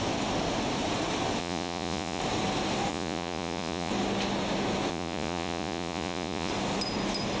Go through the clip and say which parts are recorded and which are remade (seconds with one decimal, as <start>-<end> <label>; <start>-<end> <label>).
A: 0.0-1.4 recorded; 1.4-2.2 remade; 2.2-2.9 recorded; 2.9-3.9 remade; 3.9-4.9 recorded; 4.9-6.5 remade; 6.5-7.4 recorded